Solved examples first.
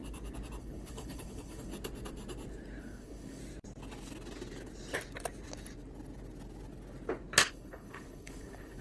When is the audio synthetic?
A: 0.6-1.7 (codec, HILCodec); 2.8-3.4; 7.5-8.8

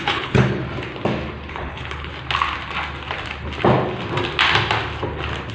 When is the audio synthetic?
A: 0.0-0.6 (codec, HILCodec); 1.5-2.1